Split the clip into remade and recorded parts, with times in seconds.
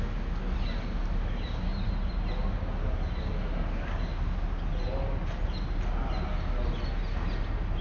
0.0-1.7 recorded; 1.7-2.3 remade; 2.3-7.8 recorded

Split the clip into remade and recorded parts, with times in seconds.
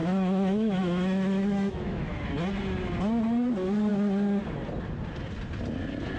0.0-2.1 remade; 2.1-6.2 recorded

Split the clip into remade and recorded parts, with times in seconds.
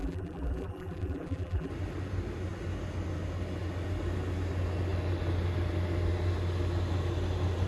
0.0-1.7 remade; 1.7-7.7 recorded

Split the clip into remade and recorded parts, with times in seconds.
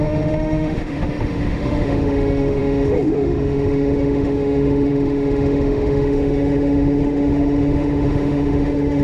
0.0-9.0 remade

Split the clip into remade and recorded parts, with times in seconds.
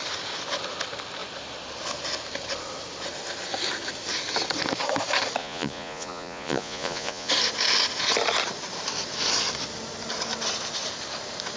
0.0-5.4 recorded; 5.4-7.3 remade; 7.3-11.6 recorded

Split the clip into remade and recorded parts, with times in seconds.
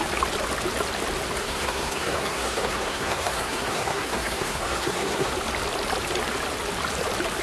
0.0-1.4 recorded; 1.4-5.3 remade; 5.3-7.4 recorded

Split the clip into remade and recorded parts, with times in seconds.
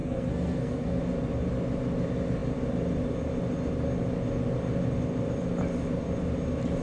0.0-1.0 remade; 1.0-6.8 recorded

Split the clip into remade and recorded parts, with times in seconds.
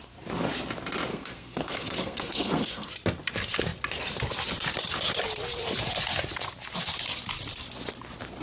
0.0-1.1 recorded; 1.1-2.9 remade; 2.9-8.4 recorded